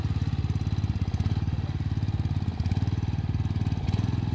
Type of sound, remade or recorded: recorded